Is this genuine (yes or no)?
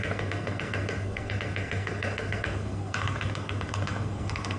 no